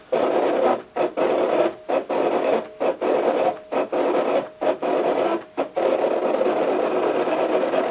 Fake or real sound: real